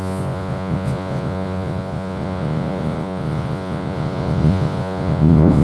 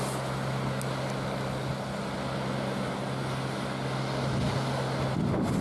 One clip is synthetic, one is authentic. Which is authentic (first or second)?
second